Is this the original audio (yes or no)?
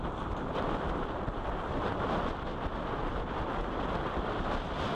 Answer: yes